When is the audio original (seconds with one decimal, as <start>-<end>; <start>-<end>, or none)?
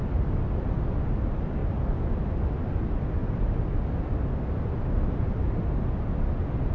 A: 0.0-6.7